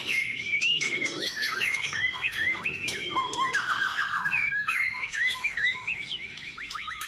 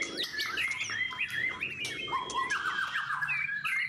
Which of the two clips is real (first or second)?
second